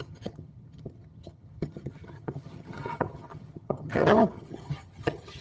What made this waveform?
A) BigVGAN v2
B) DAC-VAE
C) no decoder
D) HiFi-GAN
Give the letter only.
D